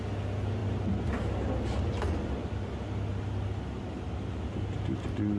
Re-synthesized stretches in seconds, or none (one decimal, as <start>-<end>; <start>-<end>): none